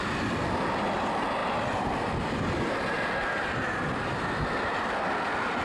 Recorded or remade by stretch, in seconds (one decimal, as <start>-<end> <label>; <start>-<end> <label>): 0.0-5.6 recorded